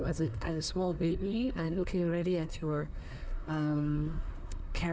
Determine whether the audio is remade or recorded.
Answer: remade